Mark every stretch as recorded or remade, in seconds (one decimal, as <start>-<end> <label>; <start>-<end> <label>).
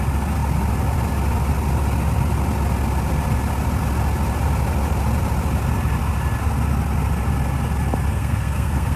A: 0.0-8.1 recorded; 8.1-9.0 remade